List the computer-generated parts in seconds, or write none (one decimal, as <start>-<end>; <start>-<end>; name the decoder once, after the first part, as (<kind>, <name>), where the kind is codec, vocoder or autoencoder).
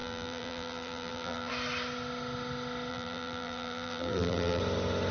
0.0-1.5 (vocoder, BigVGAN v2); 2.9-4.6